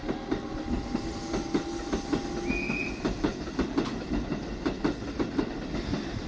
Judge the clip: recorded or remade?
recorded